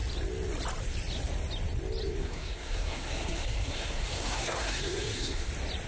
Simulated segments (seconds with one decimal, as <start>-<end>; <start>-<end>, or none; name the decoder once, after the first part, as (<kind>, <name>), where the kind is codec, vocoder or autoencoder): 2.2-5.5 (codec, SNAC)